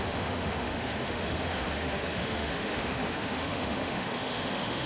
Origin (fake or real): fake